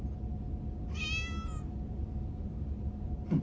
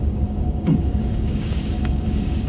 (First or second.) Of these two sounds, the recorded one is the first